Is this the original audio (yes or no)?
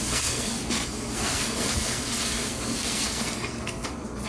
no